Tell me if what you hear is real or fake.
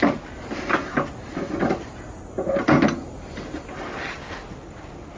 real